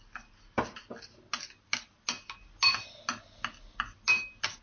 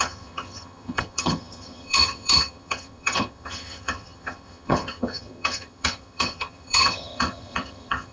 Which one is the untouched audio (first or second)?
first